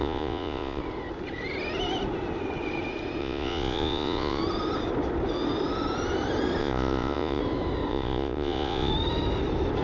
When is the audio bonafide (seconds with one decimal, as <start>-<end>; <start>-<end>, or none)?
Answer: 0.8-3.2; 4.4-6.6; 7.4-7.9; 8.9-9.8

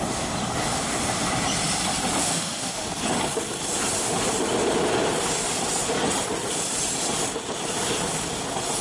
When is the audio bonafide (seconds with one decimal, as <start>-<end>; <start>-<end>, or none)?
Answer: 0.0-2.2; 2.8-8.8

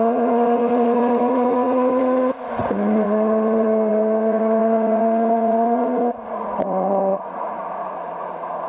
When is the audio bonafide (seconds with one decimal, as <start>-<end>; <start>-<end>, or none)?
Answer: none